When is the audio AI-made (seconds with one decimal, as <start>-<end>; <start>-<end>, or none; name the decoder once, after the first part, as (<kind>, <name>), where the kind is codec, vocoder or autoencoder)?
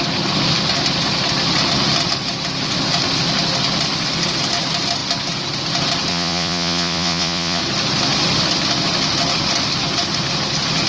6.1-7.6 (vocoder, Vocos)